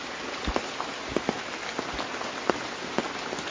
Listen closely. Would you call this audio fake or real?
real